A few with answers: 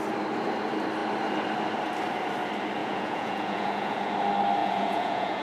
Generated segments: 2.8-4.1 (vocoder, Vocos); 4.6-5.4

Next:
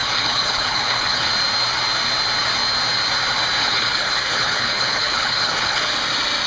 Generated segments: 0.0-1.3 (codec, HILCodec); 3.6-5.9